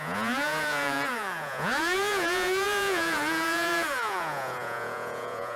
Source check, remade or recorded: remade